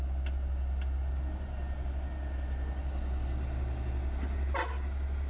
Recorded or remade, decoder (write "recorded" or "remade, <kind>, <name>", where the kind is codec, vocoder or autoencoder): recorded